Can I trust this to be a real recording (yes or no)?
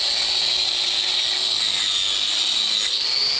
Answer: yes